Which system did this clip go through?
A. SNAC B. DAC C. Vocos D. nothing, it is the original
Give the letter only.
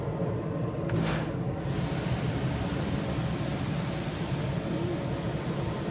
D